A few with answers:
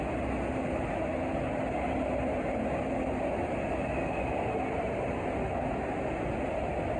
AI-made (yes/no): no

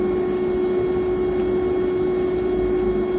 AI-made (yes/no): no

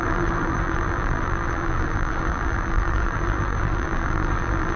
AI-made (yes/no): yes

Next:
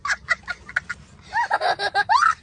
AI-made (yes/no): no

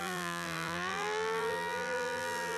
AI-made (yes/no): yes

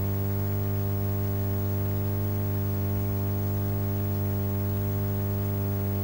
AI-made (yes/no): no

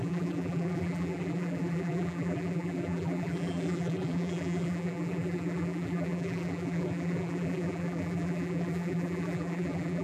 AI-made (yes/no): yes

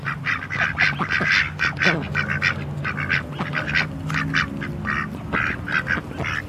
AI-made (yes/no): no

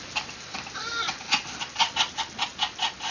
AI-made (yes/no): no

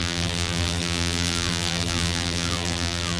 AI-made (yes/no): yes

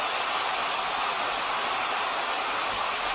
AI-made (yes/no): no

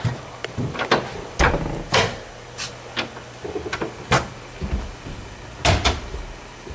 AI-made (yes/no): no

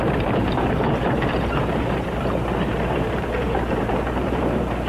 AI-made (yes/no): yes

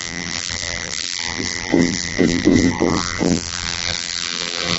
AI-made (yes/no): yes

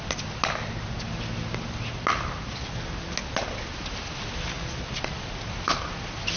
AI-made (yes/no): no